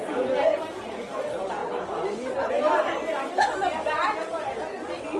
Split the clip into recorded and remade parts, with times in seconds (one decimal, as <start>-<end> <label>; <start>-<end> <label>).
0.0-5.2 recorded

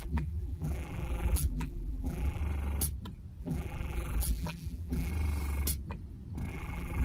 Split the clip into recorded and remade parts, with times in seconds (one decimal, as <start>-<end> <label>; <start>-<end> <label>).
0.0-2.4 remade; 2.4-3.4 recorded; 3.4-5.1 remade; 5.1-6.5 recorded; 6.5-7.0 remade

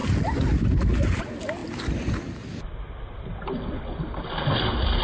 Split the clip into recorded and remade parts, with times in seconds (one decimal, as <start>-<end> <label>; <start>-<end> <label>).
0.0-5.0 recorded

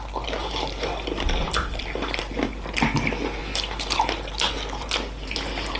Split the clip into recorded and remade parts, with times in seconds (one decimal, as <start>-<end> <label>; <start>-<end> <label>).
0.0-0.4 recorded; 0.4-2.6 remade; 2.6-3.4 recorded; 3.4-4.1 remade; 4.1-5.8 recorded

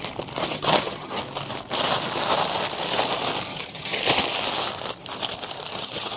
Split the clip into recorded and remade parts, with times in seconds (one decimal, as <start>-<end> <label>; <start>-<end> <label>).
0.0-0.5 recorded; 0.5-1.2 remade; 1.2-3.5 recorded; 3.5-4.0 remade; 4.0-5.7 recorded; 5.7-6.2 remade

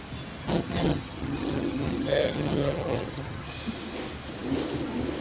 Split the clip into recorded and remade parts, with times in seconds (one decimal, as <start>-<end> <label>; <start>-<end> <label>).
0.0-0.4 recorded; 0.4-3.5 remade; 3.5-5.2 recorded

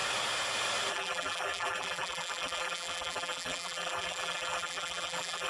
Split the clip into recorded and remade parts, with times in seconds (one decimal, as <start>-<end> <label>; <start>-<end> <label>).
0.0-0.9 recorded; 0.9-5.5 remade